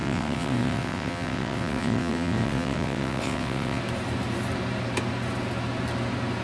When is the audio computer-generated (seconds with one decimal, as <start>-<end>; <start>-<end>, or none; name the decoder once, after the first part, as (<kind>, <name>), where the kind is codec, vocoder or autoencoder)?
0.0-3.8 (vocoder, WaveNeXt)

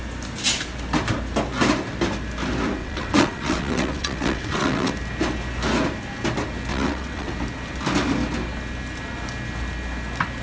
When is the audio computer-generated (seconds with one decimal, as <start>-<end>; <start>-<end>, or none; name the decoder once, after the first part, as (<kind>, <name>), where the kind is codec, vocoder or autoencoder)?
2.8-4.9 (vocoder, WaveNeXt); 6.7-7.3